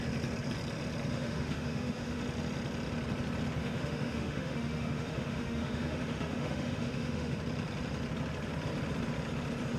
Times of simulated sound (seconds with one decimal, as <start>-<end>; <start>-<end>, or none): 1.1-2.2; 3.6-7.4